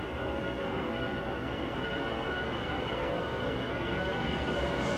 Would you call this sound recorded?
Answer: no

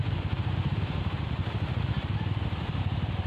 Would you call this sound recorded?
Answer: no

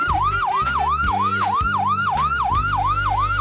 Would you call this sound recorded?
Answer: yes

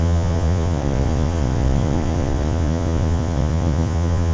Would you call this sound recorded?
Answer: no